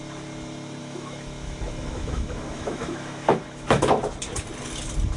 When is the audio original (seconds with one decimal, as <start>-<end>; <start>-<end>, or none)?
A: 0.0-0.8; 3.9-5.2